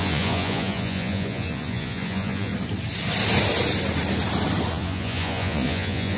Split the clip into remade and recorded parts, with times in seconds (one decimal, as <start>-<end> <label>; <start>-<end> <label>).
0.0-2.5 remade; 2.5-4.7 recorded; 4.7-6.2 remade